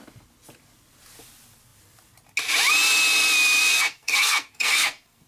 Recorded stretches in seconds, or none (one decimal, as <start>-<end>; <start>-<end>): 0.0-3.7